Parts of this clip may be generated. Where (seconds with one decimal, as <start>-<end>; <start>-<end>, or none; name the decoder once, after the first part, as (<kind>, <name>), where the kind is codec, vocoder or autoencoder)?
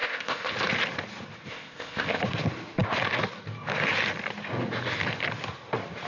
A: 0.0-0.5 (codec, ZipCodec); 1.5-2.2